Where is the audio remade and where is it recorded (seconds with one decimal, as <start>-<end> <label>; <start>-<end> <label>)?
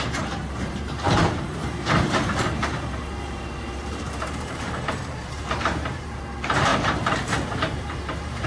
0.0-8.5 remade